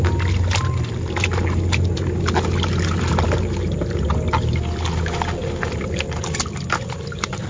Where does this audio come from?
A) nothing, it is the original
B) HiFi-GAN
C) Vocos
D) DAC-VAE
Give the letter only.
A